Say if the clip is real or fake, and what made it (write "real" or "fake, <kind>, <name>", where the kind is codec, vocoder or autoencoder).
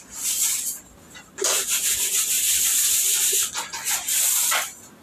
real